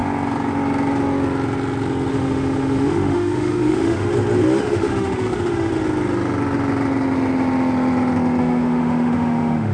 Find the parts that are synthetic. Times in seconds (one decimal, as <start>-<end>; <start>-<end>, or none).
2.1-4.1; 4.6-5.7; 8.4-9.7

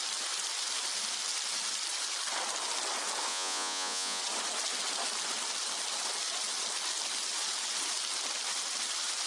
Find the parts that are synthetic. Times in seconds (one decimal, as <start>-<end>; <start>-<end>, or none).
3.3-4.2